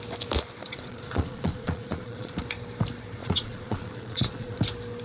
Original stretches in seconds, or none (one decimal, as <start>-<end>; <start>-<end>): 0.0-0.6; 2.4-3.2; 4.6-5.0